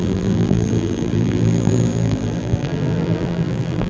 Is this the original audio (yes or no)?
no